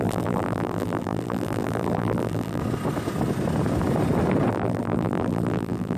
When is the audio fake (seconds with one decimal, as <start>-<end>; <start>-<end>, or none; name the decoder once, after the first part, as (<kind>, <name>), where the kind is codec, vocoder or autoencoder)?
0.0-2.6 (vocoder, BigVGAN v2); 4.5-6.0